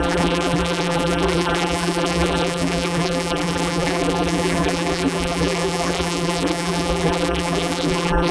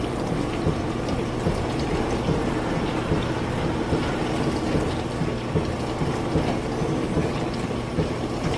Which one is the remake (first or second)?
first